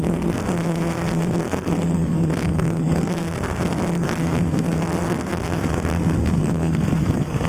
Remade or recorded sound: remade